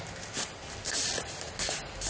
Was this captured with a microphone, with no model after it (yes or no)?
yes